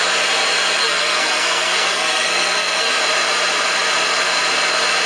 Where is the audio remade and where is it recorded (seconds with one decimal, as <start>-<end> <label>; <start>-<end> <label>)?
0.0-0.8 recorded; 0.8-3.0 remade; 3.0-5.1 recorded